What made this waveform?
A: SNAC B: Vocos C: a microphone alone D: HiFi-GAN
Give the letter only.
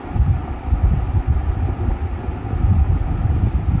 C